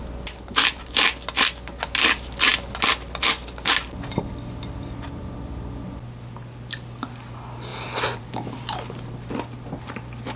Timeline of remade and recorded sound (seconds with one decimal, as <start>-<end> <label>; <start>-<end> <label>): 0.0-10.4 recorded